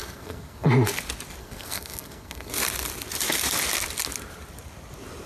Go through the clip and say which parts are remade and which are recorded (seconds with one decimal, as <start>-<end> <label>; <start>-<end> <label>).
0.0-0.7 remade; 0.7-1.4 recorded; 1.4-2.5 remade; 2.5-5.3 recorded